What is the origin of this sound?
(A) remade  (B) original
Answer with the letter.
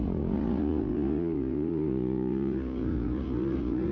A